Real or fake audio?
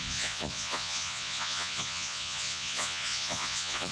fake